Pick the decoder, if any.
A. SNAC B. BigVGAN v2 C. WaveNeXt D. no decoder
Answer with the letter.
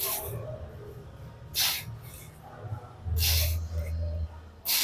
D